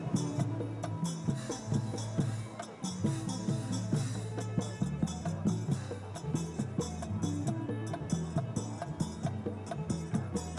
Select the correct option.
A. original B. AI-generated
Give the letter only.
A